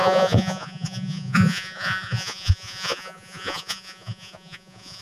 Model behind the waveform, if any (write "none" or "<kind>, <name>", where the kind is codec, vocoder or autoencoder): vocoder, Vocos